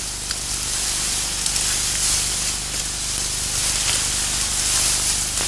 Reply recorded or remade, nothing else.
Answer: recorded